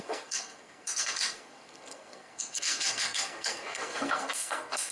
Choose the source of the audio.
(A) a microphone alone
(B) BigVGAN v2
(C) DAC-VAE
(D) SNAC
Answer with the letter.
D